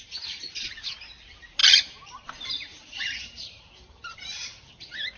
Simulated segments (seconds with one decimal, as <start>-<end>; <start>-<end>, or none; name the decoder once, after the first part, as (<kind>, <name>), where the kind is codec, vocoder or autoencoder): 1.6-4.7 (vocoder, BigVGAN v2)

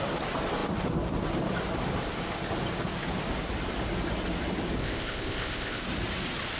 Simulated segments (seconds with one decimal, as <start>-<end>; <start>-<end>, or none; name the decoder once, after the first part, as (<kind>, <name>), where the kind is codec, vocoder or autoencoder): 4.8-5.8 (codec, ZipCodec)

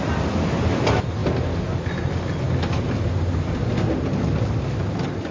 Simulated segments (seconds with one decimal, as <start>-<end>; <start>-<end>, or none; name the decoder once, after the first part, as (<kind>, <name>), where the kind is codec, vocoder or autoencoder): none

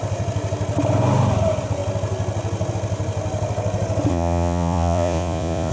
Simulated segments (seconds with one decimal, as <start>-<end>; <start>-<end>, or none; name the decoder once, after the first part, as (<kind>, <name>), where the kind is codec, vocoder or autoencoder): 4.1-5.7 (vocoder, Vocos)

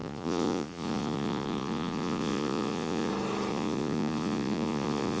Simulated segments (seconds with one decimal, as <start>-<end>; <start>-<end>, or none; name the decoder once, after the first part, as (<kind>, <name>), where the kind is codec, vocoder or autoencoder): 0.0-3.1 (vocoder, Vocos); 3.5-5.2